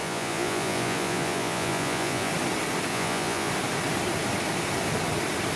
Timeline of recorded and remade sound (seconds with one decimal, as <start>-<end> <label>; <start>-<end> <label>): 0.0-2.3 remade; 2.3-2.9 recorded; 2.9-3.5 remade; 3.5-5.6 recorded

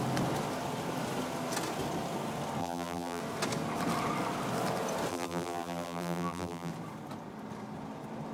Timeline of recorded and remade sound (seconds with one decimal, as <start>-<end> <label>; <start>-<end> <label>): 0.0-2.6 recorded; 2.6-3.2 remade; 3.2-5.1 recorded; 5.1-6.7 remade; 6.7-8.3 recorded

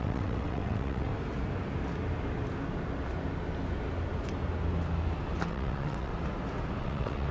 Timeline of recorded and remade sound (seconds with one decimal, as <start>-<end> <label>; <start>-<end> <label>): 0.0-1.1 remade; 1.1-5.5 recorded; 5.5-6.1 remade; 6.1-6.8 recorded; 6.8-7.3 remade

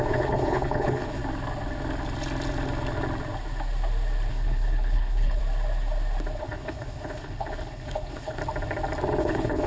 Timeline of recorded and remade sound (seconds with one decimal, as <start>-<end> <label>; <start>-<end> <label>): 0.0-1.2 remade; 1.2-4.3 recorded; 4.3-5.4 remade; 5.4-6.4 recorded; 6.4-8.4 remade; 8.4-9.2 recorded; 9.2-9.7 remade

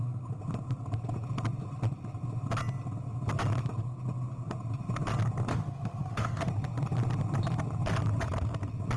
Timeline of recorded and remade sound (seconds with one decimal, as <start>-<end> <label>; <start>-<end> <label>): 0.0-5.5 recorded; 5.5-6.5 remade; 6.5-9.0 recorded